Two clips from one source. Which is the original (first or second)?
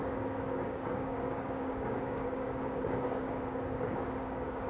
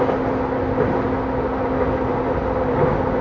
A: second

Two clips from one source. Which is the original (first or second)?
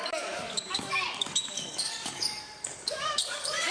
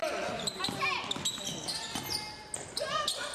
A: second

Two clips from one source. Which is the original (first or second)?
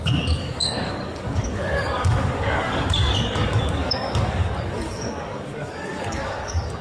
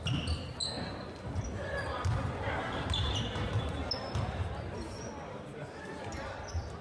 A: second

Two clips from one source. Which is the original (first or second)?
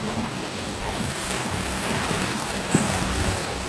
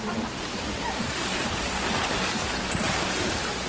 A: second